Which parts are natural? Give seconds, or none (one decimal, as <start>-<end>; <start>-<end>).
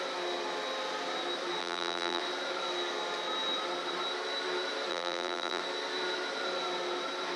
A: 0.0-1.6; 2.2-4.9; 5.6-7.4